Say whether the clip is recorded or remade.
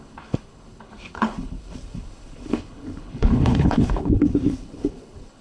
remade